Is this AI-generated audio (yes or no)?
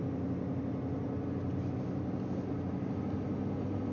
no